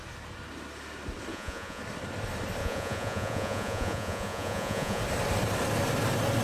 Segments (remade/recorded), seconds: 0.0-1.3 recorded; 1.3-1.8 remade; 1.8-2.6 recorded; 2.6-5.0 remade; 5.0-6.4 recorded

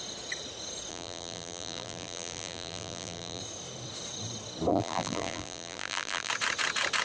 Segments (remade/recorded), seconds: 0.0-0.9 recorded; 0.9-3.4 remade; 3.4-4.7 recorded; 4.7-6.3 remade; 6.3-7.0 recorded